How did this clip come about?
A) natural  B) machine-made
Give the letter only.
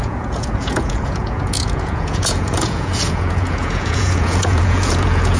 B